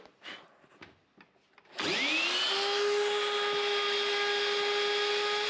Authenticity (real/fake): real